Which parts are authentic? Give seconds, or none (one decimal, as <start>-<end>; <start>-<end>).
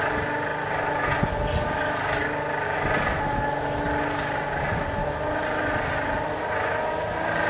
0.0-7.5